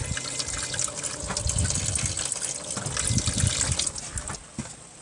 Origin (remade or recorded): recorded